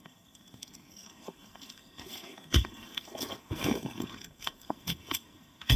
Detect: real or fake fake